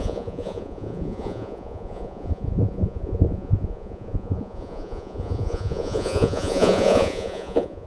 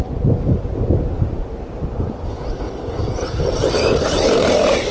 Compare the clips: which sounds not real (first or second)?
first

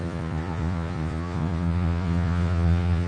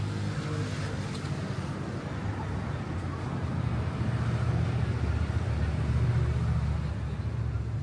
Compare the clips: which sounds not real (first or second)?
first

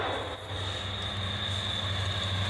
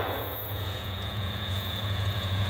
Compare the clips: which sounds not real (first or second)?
second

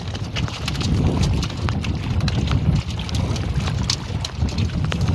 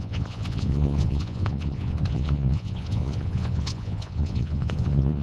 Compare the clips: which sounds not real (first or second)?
second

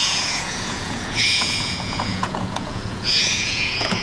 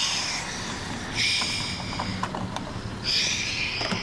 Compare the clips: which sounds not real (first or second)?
first